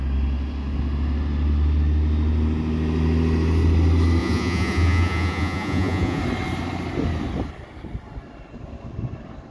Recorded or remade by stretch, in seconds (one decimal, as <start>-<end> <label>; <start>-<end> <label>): 0.0-4.2 recorded; 4.2-6.2 remade; 6.2-9.5 recorded